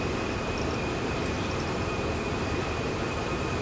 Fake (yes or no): no